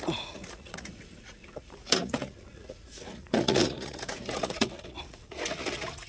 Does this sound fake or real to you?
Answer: fake